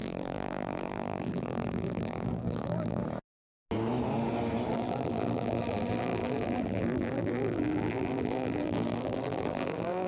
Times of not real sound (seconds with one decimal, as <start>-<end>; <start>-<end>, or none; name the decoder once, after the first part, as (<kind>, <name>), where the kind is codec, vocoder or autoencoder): 0.0-3.0 (vocoder, BigVGAN v2); 4.7-10.1